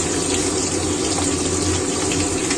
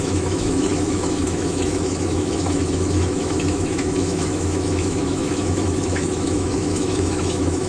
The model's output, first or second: second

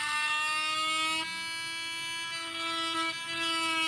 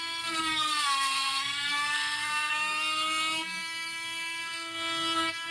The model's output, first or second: second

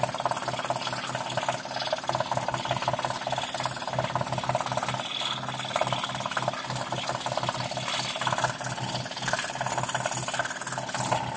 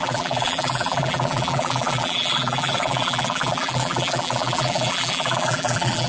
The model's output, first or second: second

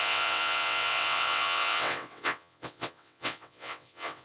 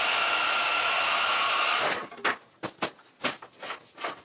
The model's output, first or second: first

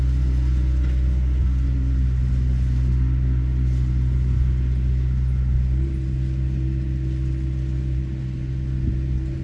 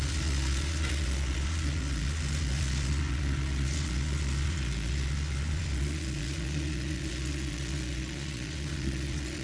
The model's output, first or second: second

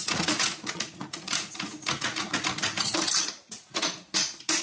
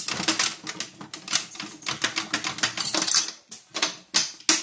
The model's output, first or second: first